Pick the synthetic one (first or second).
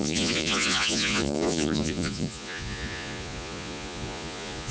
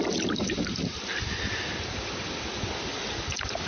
first